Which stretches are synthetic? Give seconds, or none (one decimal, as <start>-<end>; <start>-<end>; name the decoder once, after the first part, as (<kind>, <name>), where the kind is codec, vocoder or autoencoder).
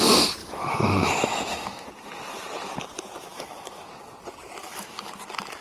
0.4-1.9 (autoencoder, DAC-VAE); 3.3-3.9; 4.6-5.1